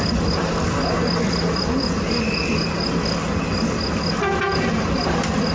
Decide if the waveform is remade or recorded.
recorded